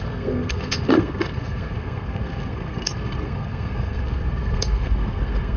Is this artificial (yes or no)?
yes